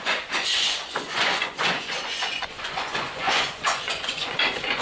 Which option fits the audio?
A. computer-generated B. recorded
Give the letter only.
A